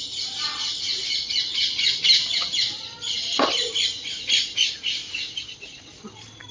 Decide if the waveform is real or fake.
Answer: real